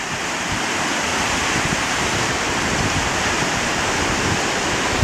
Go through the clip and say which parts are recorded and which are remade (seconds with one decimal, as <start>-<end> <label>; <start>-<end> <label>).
0.0-5.0 remade